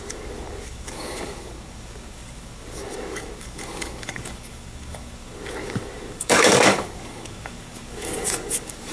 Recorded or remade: remade